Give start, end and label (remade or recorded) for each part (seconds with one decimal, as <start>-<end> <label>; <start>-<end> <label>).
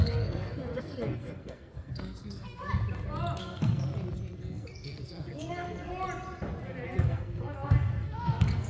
0.0-2.6 remade; 2.6-3.4 recorded; 3.4-3.9 remade; 3.9-4.4 recorded; 4.4-5.9 remade; 5.9-7.0 recorded; 7.0-8.7 remade